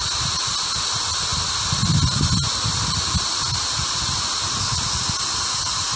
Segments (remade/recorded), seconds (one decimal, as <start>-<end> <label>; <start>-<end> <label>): 0.0-6.0 recorded